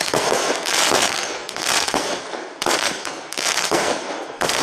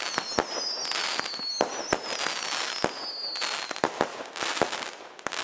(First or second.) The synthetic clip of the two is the first